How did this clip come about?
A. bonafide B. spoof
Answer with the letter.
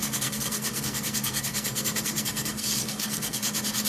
B